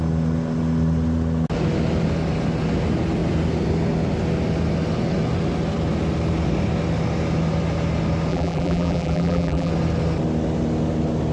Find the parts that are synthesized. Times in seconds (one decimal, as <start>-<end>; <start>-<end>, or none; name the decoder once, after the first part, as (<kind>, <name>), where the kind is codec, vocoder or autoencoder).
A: 8.3-9.7 (vocoder, BigVGAN v2)